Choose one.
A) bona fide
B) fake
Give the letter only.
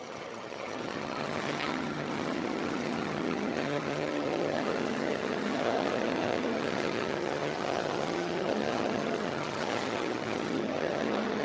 B